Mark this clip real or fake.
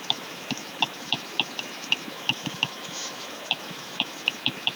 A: fake